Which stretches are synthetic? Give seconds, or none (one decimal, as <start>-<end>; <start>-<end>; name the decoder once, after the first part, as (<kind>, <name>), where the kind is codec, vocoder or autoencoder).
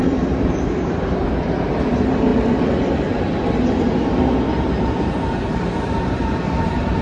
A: 0.0-2.3 (vocoder, BigVGAN v2); 4.5-7.0